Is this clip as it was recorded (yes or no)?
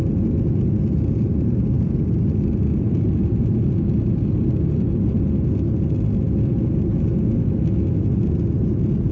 yes